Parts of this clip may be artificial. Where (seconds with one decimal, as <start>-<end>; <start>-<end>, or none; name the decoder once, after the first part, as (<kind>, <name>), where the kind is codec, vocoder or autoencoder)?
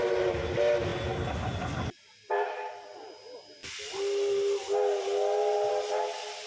none